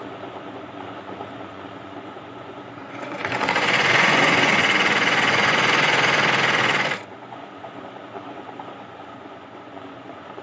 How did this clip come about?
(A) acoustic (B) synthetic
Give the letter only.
B